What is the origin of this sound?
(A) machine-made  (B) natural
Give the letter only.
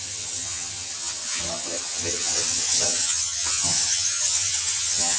A